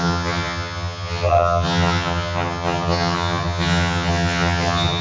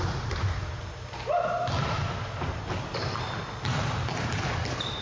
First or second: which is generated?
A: first